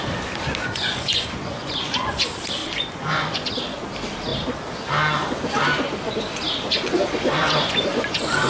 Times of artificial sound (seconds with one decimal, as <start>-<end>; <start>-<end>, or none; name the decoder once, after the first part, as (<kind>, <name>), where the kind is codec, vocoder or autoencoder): 0.6-2.2 (vocoder, Vocos); 2.6-3.5; 7.4-8.5